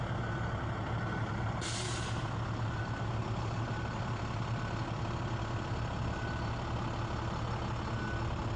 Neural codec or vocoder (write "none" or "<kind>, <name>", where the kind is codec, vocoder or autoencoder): none